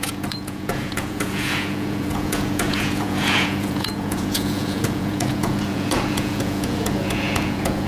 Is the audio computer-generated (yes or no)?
yes